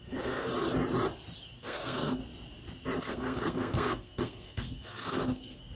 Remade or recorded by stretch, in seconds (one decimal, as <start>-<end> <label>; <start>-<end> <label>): 0.0-0.5 remade; 0.5-1.6 recorded; 1.6-2.2 remade; 2.2-3.0 recorded; 3.0-5.7 remade